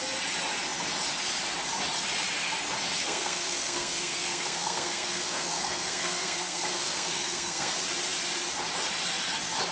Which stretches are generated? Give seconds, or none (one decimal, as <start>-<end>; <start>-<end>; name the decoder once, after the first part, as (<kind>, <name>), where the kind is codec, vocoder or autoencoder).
3.0-7.7 (codec, SNAC)